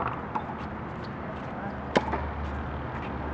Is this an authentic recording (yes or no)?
yes